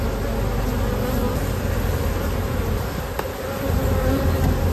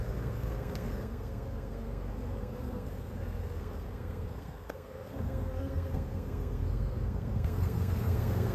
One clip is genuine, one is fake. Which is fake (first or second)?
second